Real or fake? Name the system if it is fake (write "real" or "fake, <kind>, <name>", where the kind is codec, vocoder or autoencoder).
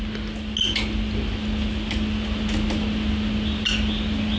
real